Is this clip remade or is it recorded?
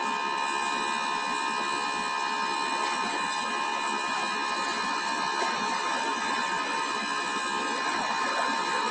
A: recorded